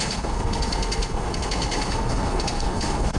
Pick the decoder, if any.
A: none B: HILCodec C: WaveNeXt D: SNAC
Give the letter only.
D